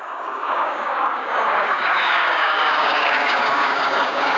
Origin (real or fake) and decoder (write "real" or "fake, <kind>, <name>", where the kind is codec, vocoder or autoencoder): fake, codec, DAC